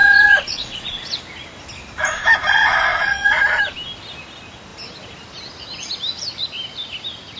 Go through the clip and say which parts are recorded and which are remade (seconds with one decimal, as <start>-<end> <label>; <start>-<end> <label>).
0.0-1.2 remade; 1.2-2.9 recorded; 2.9-3.6 remade; 3.6-7.4 recorded